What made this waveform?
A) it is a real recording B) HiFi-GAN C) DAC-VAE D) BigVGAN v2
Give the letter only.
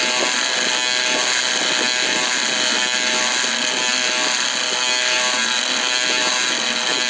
A